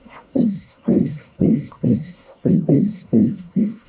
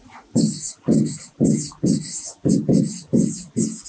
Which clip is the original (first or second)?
second